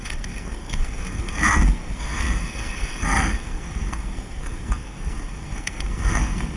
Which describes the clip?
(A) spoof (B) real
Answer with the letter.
A